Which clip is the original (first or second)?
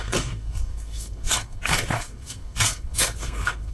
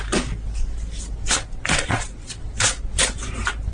second